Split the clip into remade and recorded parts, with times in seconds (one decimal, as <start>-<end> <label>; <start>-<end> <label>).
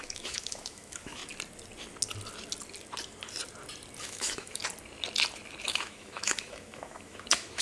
0.0-1.2 remade; 1.2-4.0 recorded; 4.0-4.6 remade; 4.6-5.6 recorded; 5.6-7.6 remade